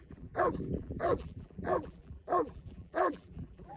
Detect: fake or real fake